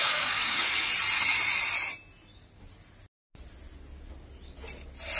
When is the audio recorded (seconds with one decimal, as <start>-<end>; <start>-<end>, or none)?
0.9-5.2